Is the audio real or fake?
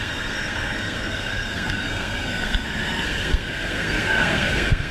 fake